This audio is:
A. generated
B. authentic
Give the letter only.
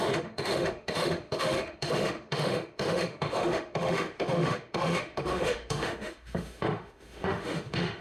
A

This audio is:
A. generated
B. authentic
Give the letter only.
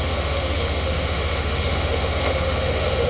A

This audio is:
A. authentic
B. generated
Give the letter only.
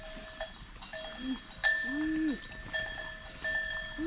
A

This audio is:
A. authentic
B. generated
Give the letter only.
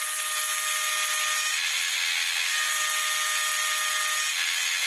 A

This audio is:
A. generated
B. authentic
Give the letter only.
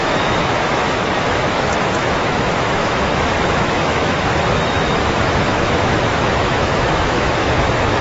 A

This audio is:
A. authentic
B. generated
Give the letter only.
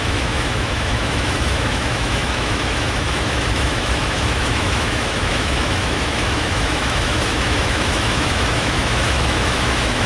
B